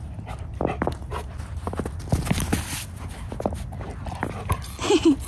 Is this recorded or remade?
recorded